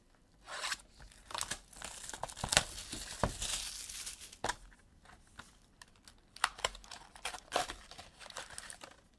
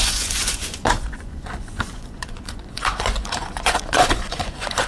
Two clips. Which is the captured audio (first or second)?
first